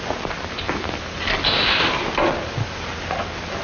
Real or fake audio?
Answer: real